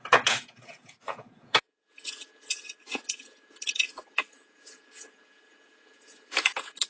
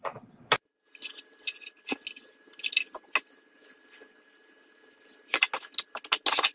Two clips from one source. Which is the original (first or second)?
second